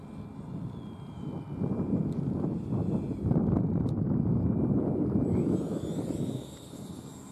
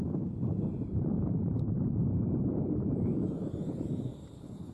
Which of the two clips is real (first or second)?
first